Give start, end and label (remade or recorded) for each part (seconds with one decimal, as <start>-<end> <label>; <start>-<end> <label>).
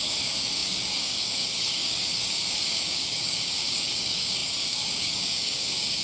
0.0-6.0 remade